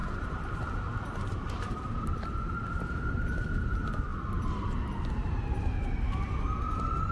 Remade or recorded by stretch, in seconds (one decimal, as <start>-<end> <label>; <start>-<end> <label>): 0.0-4.1 recorded; 4.1-5.1 remade; 5.1-7.1 recorded